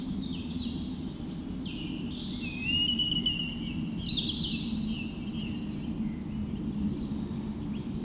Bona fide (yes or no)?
yes